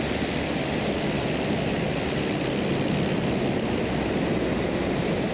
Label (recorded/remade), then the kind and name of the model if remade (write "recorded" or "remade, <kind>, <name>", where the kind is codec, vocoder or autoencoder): recorded